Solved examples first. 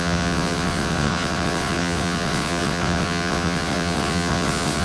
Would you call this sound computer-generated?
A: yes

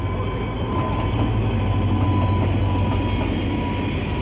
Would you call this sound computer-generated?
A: no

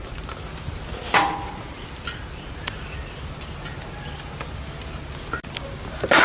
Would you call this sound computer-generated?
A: no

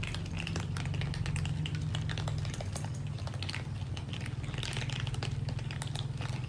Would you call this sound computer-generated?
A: no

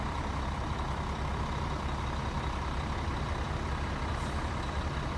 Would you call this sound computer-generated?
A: no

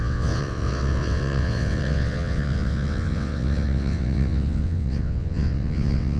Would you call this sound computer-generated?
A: yes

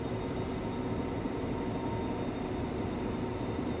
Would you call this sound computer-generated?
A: no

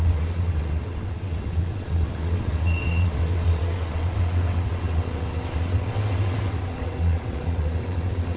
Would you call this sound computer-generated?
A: yes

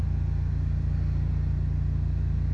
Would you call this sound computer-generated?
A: no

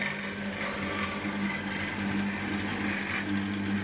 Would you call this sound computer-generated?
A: no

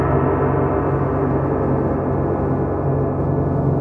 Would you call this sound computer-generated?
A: no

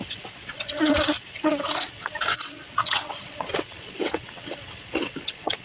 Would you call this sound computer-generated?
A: yes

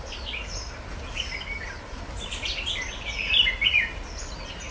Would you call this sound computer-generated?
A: no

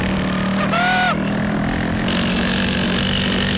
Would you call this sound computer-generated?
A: no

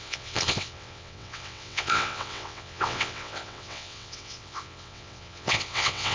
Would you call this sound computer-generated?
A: yes